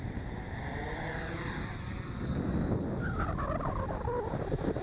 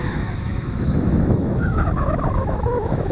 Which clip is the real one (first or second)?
first